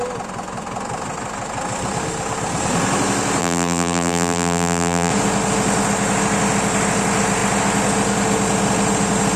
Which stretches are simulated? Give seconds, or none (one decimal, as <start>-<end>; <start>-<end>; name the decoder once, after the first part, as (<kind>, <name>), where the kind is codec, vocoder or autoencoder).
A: 3.4-5.1 (vocoder, BigVGAN v2)